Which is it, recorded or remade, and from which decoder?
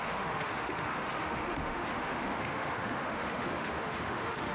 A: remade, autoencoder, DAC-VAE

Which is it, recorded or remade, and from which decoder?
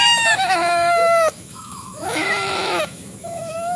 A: remade, autoencoder, DAC-VAE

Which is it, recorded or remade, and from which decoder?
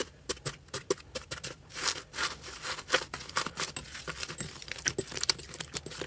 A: recorded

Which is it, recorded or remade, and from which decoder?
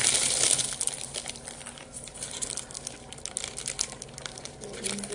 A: recorded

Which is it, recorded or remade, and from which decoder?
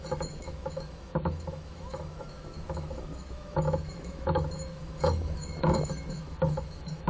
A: remade, autoencoder, DAC-VAE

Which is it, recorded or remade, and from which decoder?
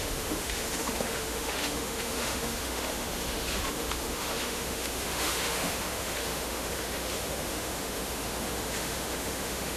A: remade, autoencoder, DAC-VAE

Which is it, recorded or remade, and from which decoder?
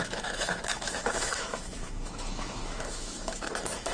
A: remade, autoencoder, DAC-VAE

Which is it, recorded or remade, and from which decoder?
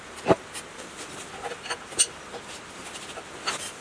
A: recorded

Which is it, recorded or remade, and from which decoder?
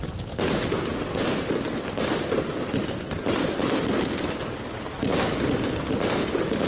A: recorded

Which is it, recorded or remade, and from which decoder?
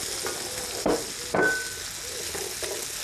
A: recorded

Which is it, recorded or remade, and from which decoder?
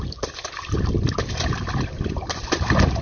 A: recorded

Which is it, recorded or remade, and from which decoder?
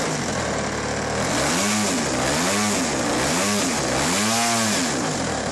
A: recorded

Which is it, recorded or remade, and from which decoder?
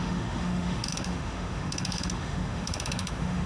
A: remade, autoencoder, DAC-VAE